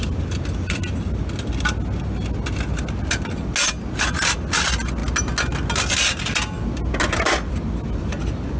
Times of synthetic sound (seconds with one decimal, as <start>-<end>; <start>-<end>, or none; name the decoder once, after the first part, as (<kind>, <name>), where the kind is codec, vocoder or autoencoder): none